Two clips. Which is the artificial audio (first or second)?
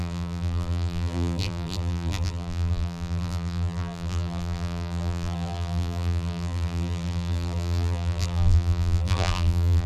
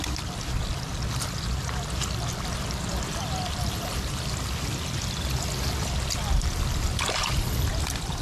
first